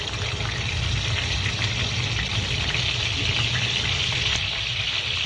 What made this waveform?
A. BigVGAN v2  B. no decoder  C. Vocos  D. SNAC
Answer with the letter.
B